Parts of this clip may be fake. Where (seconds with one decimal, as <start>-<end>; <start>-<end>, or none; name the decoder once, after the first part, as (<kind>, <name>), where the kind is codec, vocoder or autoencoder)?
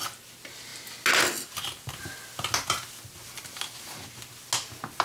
none